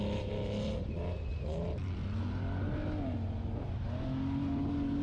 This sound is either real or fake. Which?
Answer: real